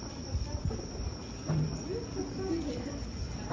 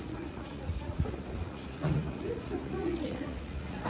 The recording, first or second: first